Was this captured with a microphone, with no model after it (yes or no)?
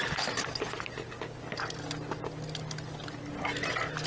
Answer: yes